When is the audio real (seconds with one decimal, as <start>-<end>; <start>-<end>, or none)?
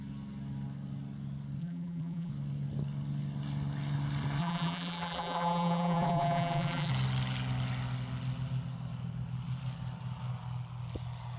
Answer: 0.0-1.6; 2.3-4.4; 6.9-11.4